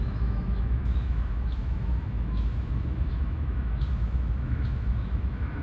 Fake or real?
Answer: fake